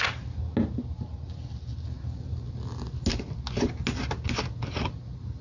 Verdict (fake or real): real